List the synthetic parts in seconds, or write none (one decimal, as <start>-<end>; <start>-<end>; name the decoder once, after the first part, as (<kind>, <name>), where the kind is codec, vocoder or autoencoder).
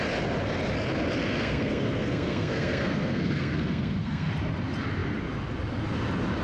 1.2-4.3 (codec, SNAC)